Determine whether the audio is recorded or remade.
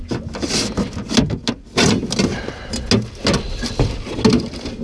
recorded